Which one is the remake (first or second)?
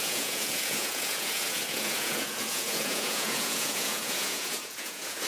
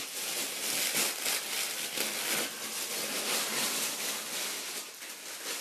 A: first